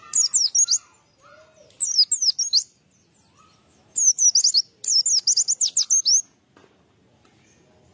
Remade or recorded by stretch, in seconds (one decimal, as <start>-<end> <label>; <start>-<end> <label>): 0.0-3.6 recorded; 3.6-4.3 remade; 4.3-7.9 recorded